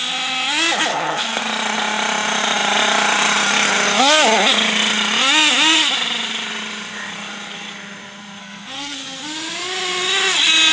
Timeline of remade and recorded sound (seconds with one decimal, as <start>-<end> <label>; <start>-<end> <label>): 0.0-0.9 recorded; 0.9-1.4 remade; 1.4-8.4 recorded; 8.4-9.2 remade; 9.2-10.7 recorded